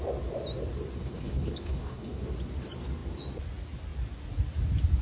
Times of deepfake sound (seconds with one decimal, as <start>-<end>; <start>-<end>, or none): 1.0-2.2